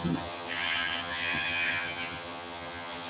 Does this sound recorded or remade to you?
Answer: remade